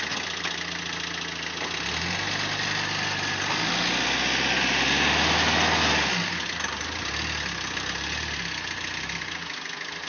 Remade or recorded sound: recorded